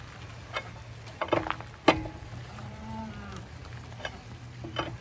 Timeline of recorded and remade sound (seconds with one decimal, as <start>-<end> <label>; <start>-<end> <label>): 0.0-2.4 recorded; 2.4-3.0 remade; 3.0-5.0 recorded